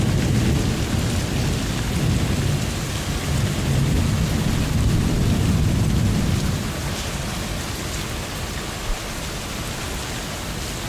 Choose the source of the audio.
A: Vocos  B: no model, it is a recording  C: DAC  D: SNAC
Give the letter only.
B